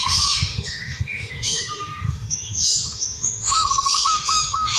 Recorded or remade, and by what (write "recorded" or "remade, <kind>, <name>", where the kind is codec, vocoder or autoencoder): remade, autoencoder, DAC-VAE